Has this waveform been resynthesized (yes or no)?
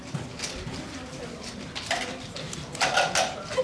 no